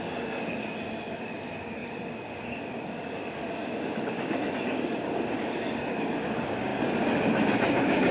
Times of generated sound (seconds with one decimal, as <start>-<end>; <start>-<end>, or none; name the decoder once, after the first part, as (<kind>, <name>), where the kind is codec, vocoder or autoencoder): 0.0-8.1 (codec, DAC)

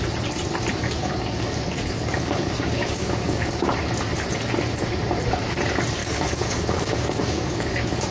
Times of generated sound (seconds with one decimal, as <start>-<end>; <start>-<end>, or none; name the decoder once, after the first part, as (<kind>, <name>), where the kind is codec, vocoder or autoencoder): 0.7-3.8 (codec, DAC); 6.0-8.1

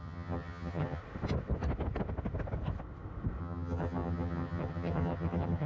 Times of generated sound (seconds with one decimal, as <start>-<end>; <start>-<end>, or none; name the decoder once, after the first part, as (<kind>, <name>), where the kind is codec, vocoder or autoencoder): 0.0-1.0 (vocoder, HiFi-GAN); 3.4-5.7

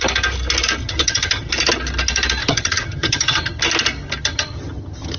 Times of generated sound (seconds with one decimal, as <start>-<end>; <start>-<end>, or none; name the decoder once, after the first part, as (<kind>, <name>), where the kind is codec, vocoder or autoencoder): 0.8-1.5 (vocoder, HiFi-GAN); 2.4-3.6; 4.2-5.2

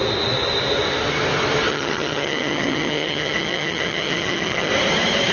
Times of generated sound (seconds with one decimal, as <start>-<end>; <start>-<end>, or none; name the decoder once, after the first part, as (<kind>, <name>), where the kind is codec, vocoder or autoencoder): 1.7-4.7 (vocoder, HiFi-GAN)